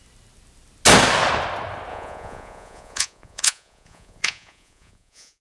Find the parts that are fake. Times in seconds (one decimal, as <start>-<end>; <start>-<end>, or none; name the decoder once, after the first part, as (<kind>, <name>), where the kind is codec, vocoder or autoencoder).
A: 1.9-5.4 (vocoder, Vocos)